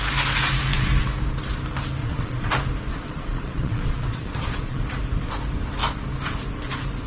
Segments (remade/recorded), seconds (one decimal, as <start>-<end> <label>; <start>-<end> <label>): 0.0-2.0 recorded; 2.0-2.5 remade; 2.5-2.9 recorded; 2.9-4.8 remade; 4.8-7.1 recorded